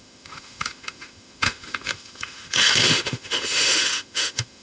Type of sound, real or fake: fake